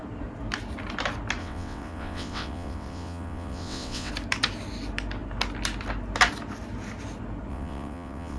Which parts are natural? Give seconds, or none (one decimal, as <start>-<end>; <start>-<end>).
0.0-1.4; 4.1-7.5